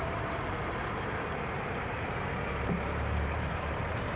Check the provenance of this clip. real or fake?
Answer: fake